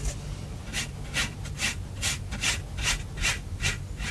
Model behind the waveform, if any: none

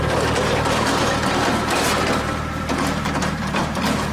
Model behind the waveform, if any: vocoder, BigVGAN v2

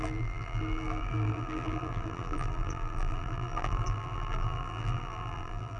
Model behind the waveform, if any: vocoder, BigVGAN v2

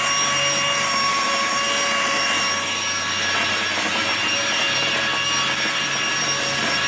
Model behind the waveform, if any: none